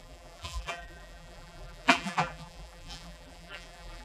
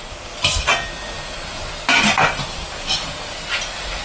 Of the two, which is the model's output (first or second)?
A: first